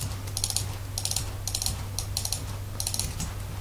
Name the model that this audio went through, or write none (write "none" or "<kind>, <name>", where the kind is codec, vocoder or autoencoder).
none